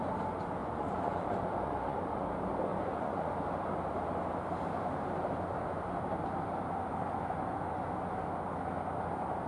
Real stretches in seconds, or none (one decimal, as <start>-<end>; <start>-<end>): 0.0-0.6; 2.2-2.7; 3.3-9.5